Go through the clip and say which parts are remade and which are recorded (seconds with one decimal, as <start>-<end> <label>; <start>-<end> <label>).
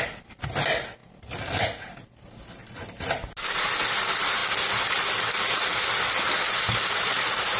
0.0-7.6 recorded